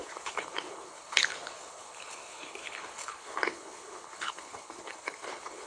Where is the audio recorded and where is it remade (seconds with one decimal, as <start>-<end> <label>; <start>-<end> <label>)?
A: 0.0-5.7 remade